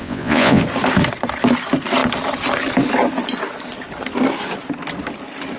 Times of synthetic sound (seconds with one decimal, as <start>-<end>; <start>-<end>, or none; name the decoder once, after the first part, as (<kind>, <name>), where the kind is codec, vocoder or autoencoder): 0.0-0.6 (vocoder, Vocos)

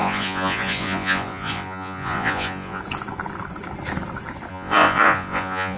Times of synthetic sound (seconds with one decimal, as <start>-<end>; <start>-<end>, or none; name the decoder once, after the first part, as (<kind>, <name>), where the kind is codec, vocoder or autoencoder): 0.0-2.8 (vocoder, Vocos); 4.5-5.8

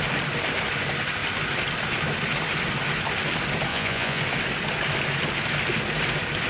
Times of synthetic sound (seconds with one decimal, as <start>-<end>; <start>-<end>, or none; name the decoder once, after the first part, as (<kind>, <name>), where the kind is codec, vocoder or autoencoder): 3.7-4.2 (vocoder, Vocos)